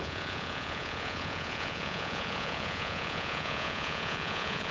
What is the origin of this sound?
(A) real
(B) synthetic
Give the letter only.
B